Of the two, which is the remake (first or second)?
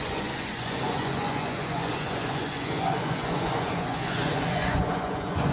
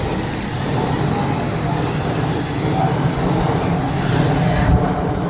first